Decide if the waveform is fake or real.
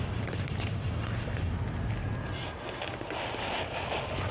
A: real